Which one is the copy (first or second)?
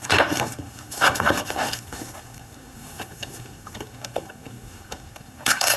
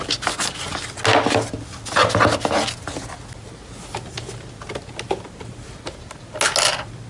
first